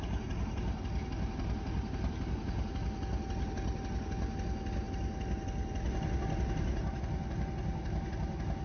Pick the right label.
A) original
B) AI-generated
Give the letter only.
A